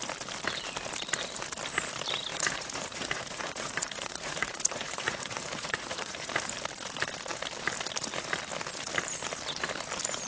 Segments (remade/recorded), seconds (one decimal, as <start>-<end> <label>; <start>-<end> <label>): 0.0-2.3 recorded; 2.3-6.3 remade; 6.3-10.3 recorded

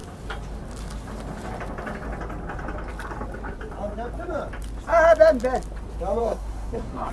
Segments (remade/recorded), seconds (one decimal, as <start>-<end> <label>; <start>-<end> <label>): 0.0-6.2 recorded; 6.2-7.1 remade

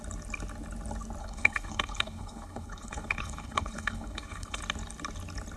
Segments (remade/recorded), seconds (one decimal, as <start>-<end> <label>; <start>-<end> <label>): 0.0-1.2 recorded; 1.2-4.6 remade; 4.6-5.6 recorded

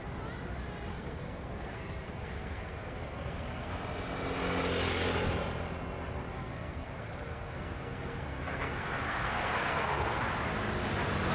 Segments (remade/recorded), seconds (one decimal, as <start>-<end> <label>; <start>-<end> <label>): 0.0-0.9 recorded; 0.9-3.7 remade; 3.7-6.4 recorded; 6.4-10.2 remade; 10.2-11.3 recorded

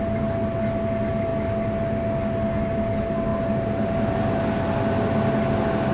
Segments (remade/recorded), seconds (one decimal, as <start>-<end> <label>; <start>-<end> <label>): 0.0-5.9 recorded

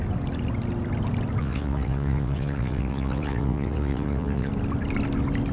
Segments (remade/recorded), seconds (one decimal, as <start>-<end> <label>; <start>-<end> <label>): 0.0-1.4 recorded; 1.4-4.5 remade; 4.5-5.5 recorded